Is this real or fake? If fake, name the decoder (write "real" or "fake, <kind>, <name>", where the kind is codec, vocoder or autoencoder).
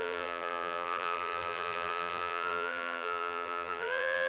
fake, vocoder, BigVGAN v2